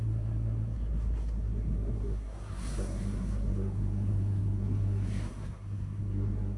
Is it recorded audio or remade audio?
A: remade